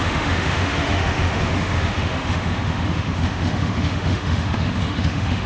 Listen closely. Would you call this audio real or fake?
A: fake